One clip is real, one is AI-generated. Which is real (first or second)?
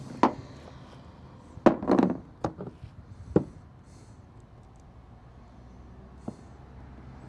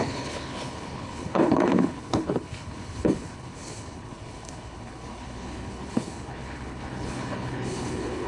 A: first